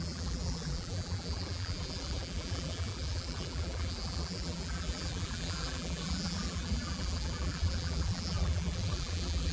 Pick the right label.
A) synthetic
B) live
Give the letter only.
A